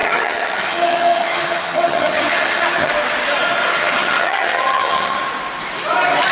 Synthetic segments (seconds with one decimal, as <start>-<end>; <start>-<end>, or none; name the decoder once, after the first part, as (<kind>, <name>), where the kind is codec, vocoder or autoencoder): 0.0-2.9 (vocoder, HiFi-GAN); 3.8-5.2